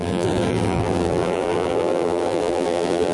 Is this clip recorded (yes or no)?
no